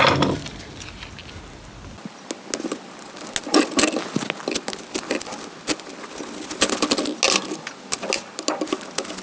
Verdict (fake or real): real